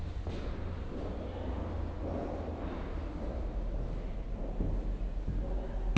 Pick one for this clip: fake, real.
real